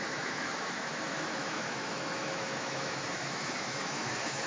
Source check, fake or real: fake